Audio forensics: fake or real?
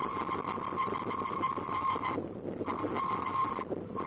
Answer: fake